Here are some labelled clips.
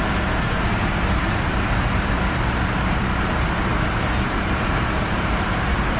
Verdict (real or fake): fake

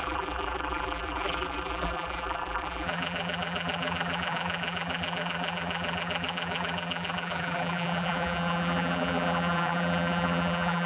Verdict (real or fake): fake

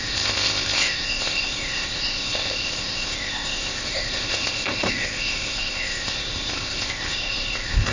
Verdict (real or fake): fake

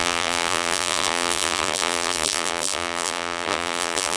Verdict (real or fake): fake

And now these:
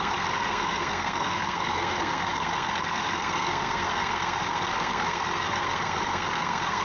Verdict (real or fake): fake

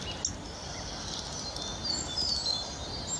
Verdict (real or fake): real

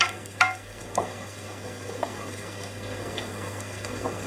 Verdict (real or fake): fake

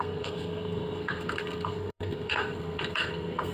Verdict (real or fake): fake